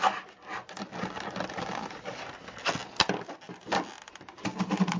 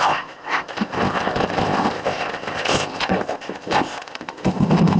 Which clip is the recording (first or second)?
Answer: first